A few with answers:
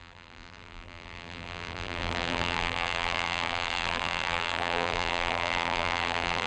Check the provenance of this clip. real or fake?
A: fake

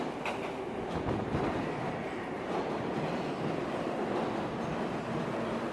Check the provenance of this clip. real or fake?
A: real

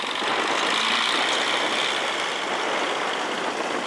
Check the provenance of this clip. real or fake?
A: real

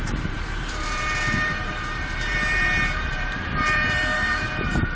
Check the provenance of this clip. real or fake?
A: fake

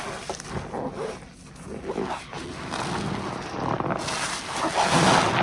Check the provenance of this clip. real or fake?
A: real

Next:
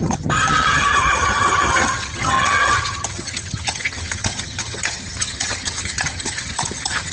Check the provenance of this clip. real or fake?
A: fake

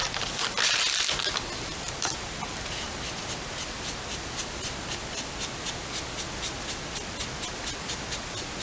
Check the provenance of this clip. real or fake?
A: real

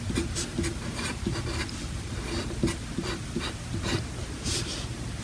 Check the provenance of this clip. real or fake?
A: real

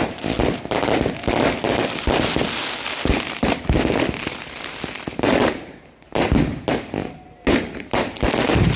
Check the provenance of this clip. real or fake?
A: real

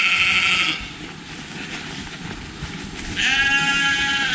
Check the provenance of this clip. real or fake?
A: real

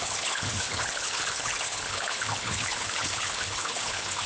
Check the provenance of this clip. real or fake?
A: fake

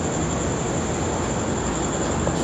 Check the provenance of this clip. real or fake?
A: real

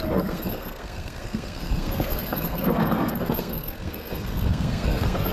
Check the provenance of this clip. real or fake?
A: fake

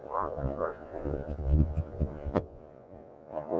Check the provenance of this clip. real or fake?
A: fake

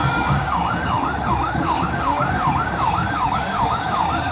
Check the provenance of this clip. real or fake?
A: fake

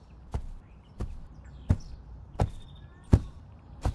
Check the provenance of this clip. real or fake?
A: fake